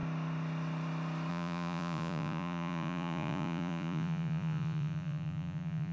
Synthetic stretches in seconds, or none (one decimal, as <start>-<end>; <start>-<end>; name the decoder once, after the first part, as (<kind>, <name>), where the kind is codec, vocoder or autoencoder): 1.3-5.9 (vocoder, Vocos)